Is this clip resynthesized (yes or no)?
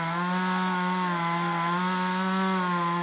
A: no